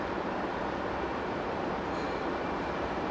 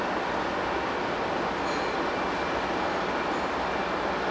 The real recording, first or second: second